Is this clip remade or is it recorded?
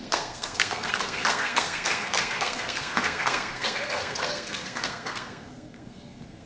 remade